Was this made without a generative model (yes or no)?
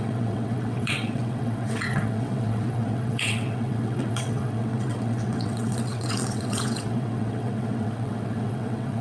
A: no